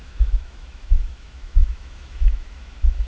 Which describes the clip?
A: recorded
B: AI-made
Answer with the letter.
B